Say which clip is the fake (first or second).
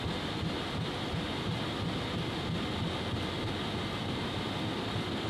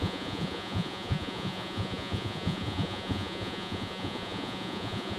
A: second